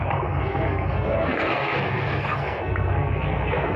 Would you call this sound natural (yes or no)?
no